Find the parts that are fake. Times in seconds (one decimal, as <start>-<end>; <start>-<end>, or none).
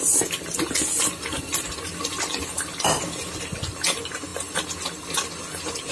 none